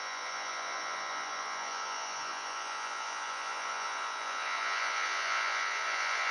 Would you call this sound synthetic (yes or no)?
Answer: yes